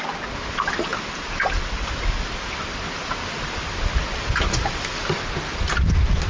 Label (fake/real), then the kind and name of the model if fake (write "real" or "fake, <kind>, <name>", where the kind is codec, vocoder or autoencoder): real